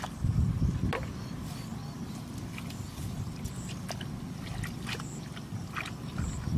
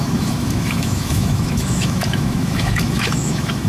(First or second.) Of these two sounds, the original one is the first